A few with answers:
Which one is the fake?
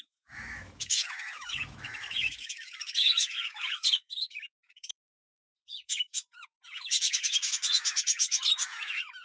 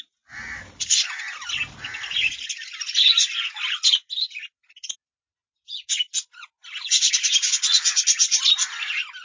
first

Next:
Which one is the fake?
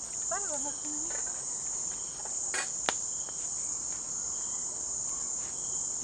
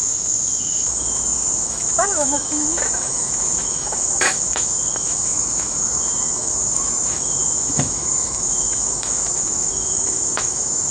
second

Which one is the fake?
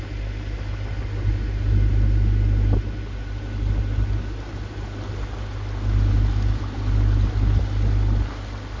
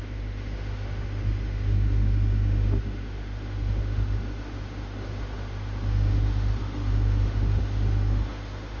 second